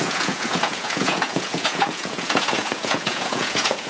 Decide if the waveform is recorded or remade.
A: remade